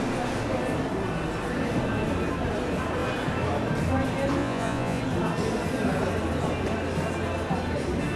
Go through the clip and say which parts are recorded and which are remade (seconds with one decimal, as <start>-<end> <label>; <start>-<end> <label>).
0.0-4.4 recorded; 4.4-5.0 remade; 5.0-8.2 recorded